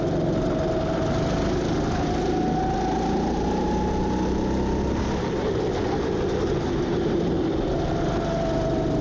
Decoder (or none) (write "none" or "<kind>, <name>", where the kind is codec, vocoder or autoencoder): none